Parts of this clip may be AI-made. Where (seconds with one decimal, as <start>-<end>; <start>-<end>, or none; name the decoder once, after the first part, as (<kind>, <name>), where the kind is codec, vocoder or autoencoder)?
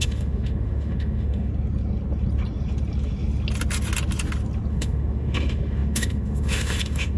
0.0-1.5 (autoencoder, DAC-VAE); 4.7-7.2